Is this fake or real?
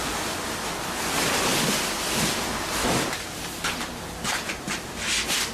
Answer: real